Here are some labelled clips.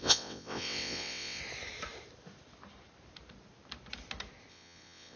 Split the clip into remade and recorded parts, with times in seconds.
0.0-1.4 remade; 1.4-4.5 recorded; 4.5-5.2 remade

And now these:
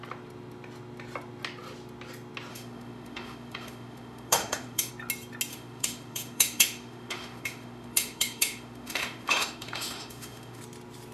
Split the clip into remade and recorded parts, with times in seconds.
0.0-2.5 recorded; 2.5-4.9 remade; 4.9-5.5 recorded; 5.5-10.6 remade; 10.6-11.1 recorded

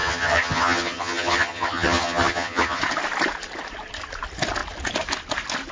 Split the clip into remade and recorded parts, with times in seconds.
0.0-2.8 remade; 2.8-5.7 recorded

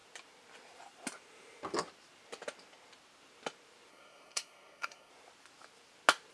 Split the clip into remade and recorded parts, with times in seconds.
0.0-3.9 recorded; 3.9-5.1 remade; 5.1-6.3 recorded

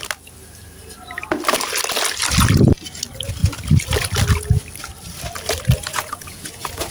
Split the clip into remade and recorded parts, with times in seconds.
0.0-5.9 recorded; 5.9-6.9 remade

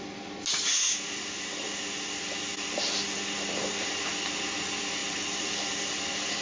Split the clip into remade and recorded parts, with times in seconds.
0.0-5.0 recorded; 5.0-6.0 remade; 6.0-6.4 recorded

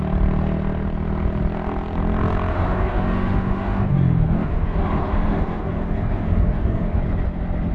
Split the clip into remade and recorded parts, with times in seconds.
0.0-2.5 recorded; 2.5-7.0 remade; 7.0-7.7 recorded

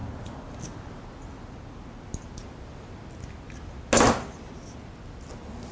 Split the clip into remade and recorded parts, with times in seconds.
0.0-5.7 recorded